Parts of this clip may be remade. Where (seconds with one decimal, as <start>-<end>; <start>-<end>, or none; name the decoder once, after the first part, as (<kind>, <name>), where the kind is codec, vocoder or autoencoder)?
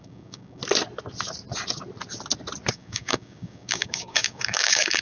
0.0-0.6 (codec, DAC); 2.7-5.0